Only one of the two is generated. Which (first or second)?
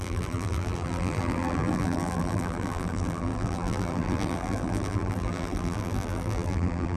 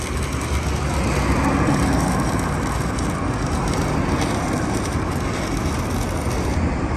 first